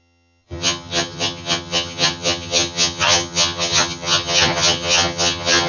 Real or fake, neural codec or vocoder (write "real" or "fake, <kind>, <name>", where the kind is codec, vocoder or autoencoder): fake, vocoder, HiFi-GAN